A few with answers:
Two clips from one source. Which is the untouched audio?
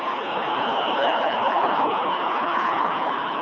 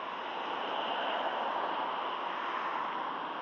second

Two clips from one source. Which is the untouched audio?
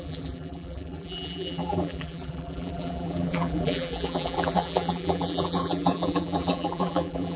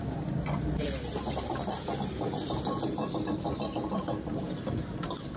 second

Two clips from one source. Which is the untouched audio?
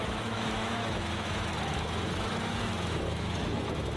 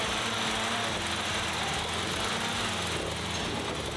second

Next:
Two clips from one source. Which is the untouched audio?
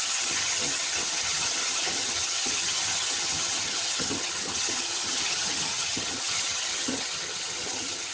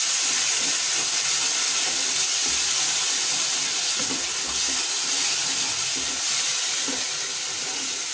second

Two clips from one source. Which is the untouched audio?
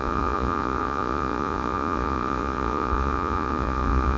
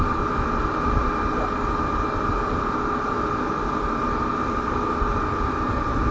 second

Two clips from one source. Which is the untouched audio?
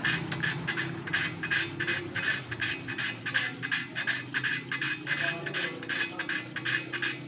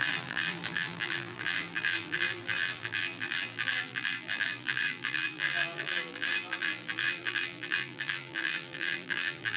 first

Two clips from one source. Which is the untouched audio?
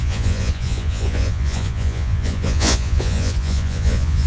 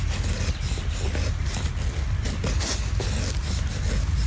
second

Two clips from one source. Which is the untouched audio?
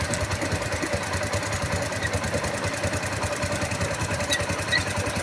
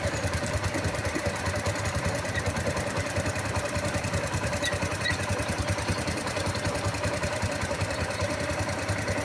first